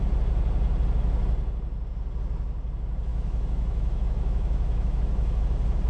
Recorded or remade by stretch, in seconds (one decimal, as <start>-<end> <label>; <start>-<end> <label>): 0.0-3.1 recorded; 3.1-5.4 remade; 5.4-5.9 recorded